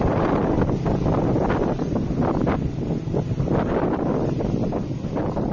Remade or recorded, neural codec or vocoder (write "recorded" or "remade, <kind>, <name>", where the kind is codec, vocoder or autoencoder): recorded